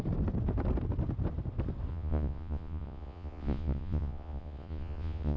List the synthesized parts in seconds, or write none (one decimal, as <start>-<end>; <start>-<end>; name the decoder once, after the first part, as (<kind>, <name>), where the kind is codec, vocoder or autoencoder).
1.9-5.4 (vocoder, Vocos)